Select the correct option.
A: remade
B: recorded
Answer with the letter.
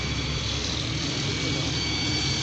A